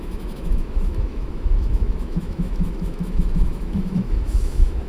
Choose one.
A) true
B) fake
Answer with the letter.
B